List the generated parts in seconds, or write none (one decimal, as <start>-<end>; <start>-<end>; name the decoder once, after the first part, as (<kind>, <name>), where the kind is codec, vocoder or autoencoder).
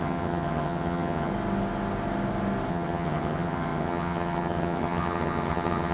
0.0-1.3 (vocoder, HiFi-GAN); 2.7-5.9